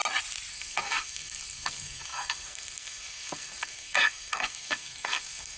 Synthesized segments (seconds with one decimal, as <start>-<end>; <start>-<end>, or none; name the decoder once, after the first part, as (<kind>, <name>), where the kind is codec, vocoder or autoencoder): 0.5-5.6 (codec, SNAC)